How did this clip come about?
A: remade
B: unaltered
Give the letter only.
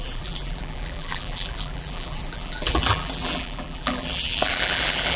A